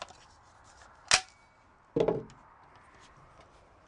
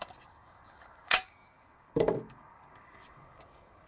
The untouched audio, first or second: first